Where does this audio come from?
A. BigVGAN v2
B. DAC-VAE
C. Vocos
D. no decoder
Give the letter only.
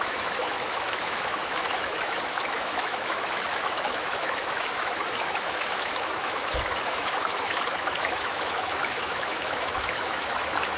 B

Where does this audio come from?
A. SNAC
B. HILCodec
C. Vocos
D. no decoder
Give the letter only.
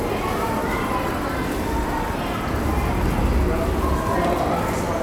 D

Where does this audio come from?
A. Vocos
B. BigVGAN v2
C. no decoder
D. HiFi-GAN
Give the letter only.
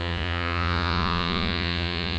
A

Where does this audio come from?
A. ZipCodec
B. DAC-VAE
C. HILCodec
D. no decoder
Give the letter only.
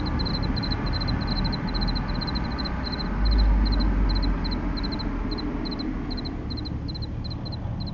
D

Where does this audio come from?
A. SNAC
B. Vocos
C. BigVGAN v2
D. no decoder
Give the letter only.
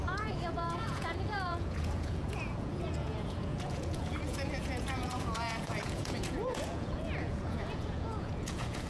B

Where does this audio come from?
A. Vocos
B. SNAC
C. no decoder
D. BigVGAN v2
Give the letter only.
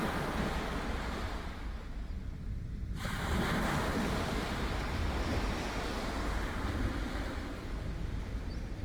C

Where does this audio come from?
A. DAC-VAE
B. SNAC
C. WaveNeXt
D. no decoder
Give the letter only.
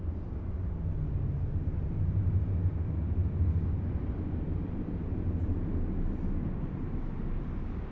D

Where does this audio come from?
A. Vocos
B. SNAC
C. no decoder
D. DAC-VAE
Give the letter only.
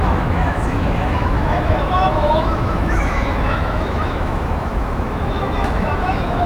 D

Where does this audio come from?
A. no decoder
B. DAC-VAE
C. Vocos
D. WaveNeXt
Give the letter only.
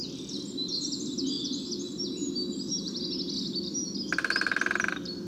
A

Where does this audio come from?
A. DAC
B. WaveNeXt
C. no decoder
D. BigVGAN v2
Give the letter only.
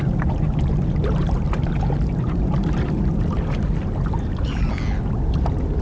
C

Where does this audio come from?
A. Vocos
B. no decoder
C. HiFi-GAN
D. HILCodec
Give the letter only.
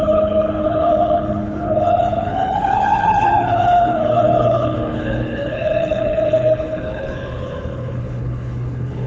D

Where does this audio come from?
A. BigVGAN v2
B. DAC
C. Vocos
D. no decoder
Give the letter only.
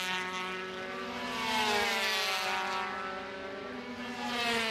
D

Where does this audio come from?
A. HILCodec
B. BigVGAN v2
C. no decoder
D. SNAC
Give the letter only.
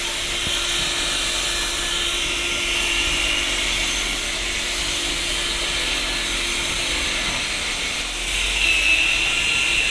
C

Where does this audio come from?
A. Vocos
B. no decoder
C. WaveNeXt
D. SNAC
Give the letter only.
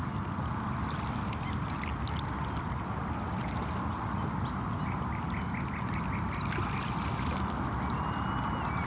B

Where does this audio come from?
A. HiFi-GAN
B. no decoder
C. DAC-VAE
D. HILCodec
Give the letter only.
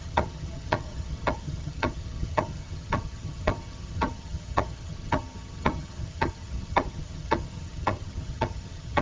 A